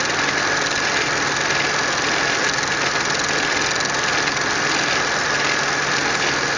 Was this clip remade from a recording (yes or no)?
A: no